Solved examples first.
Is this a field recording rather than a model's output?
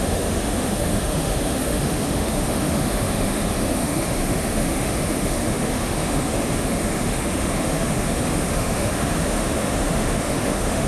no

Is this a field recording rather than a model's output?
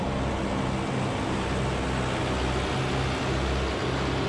yes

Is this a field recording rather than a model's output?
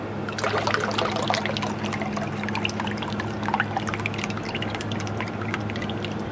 yes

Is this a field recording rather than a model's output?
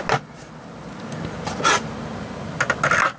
yes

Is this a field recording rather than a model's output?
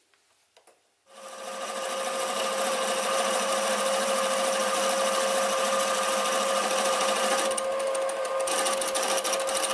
yes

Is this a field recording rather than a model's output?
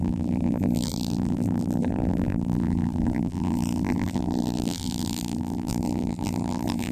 no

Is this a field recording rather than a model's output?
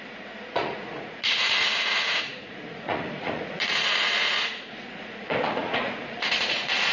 no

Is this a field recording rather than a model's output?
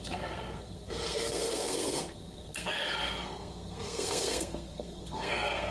no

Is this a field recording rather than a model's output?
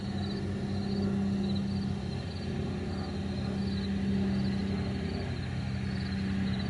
yes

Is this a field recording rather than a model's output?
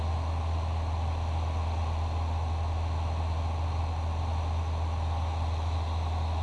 yes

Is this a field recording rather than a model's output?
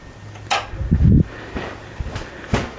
yes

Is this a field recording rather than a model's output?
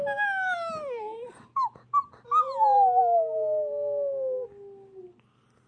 yes